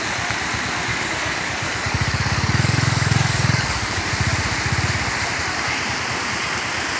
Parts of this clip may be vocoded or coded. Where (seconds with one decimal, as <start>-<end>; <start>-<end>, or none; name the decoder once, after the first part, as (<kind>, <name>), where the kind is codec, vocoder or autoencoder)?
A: 0.9-4.1 (codec, DAC)